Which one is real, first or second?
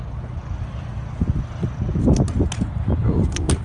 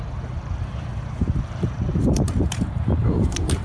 first